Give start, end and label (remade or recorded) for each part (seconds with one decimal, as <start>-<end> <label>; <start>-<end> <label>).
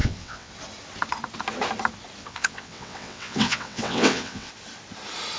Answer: 0.0-0.5 remade; 0.5-2.2 recorded; 2.2-4.5 remade; 4.5-5.4 recorded